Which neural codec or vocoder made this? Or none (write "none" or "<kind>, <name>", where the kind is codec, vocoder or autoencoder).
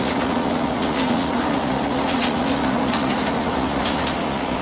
vocoder, Vocos